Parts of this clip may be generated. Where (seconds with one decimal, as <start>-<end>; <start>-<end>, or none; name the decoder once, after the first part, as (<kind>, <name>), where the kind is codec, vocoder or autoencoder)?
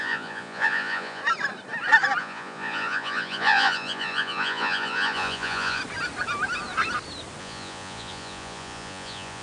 0.0-1.2 (vocoder, Vocos); 2.2-5.8; 7.4-9.4